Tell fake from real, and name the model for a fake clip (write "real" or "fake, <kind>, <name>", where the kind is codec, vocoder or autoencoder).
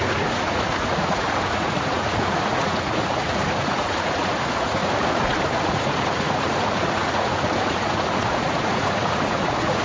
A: fake, vocoder, Vocos